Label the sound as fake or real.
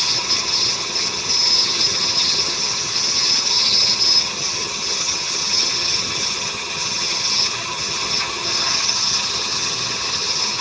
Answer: fake